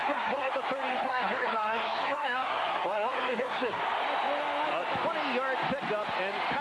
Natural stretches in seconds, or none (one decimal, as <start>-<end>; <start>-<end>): 0.5-0.9; 3.8-6.6

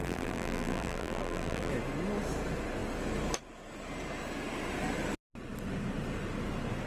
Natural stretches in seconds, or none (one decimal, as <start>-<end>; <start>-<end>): 1.7-6.9

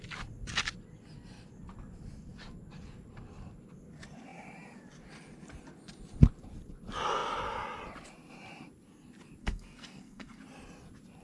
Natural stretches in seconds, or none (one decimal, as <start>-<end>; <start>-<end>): 0.0-9.4; 10.4-11.2

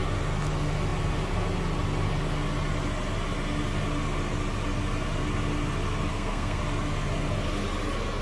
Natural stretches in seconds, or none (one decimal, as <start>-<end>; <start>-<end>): 0.0-6.1; 6.6-8.2

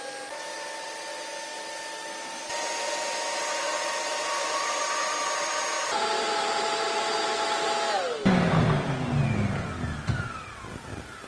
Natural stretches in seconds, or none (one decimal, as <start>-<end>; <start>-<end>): 0.0-11.3

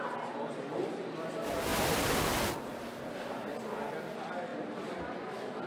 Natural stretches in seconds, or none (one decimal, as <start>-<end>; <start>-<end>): 0.0-1.7; 2.4-5.7

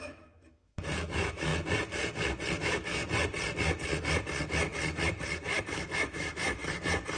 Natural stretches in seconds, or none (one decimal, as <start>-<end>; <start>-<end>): 1.5-2.6; 3.0-5.6; 6.6-7.2

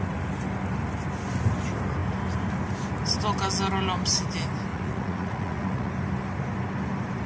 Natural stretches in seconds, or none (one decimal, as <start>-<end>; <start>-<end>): 0.0-4.7; 5.9-7.3